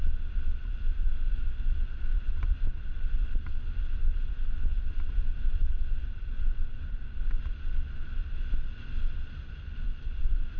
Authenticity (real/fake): real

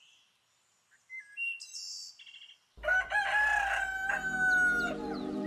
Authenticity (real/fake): real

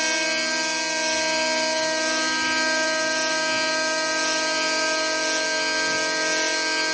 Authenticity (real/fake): real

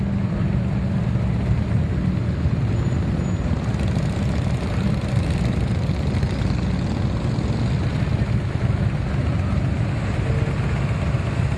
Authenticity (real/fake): real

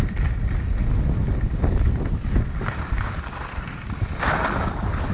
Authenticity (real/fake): real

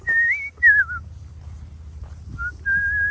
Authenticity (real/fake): real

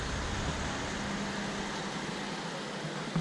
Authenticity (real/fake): real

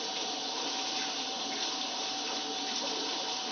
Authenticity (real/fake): real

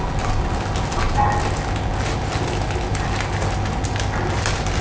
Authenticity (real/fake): real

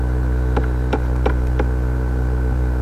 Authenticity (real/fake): real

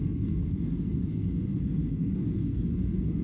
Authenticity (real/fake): fake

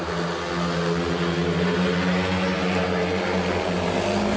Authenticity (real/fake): real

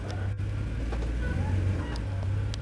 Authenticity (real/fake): real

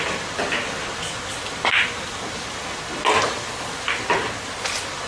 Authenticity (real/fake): real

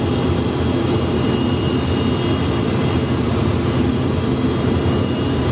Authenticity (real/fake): real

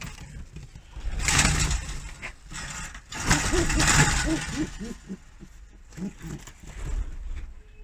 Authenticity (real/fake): real